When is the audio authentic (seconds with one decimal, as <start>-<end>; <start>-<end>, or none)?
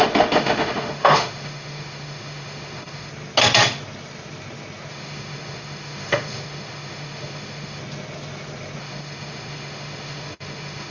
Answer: 3.1-4.9; 7.8-8.8